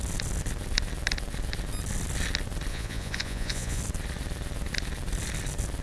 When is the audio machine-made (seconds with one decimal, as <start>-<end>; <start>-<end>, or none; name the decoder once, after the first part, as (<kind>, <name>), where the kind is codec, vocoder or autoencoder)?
2.7-3.8 (vocoder, Vocos)